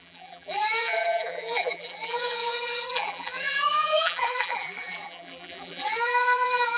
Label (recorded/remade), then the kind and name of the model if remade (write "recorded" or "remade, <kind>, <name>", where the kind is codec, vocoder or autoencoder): remade, vocoder, BigVGAN v2